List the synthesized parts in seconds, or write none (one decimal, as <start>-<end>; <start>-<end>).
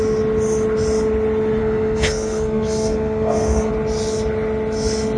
1.6-3.7